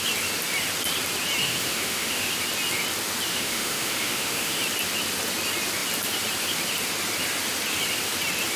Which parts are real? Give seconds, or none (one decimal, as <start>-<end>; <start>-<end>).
0.0-1.4; 2.3-3.3; 4.6-8.6